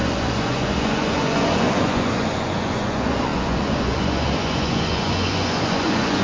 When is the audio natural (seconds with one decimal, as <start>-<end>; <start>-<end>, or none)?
none